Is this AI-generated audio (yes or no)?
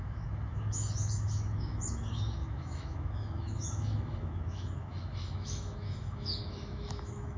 yes